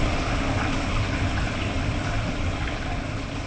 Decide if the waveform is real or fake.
real